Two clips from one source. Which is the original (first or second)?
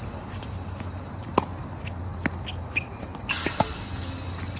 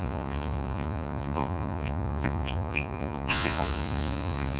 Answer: first